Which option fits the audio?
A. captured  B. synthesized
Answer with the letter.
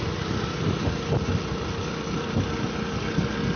A